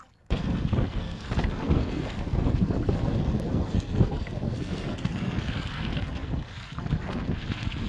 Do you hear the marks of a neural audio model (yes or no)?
yes